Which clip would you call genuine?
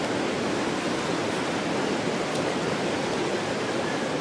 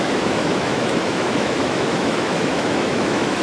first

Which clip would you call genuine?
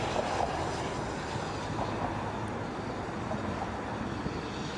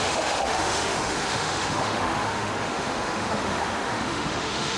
first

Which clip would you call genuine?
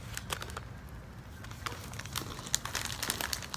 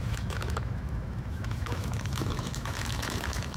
first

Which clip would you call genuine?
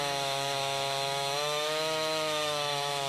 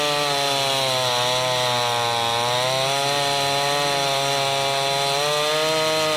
second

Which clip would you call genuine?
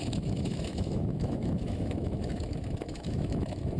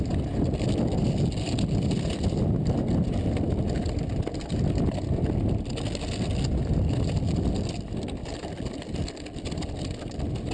second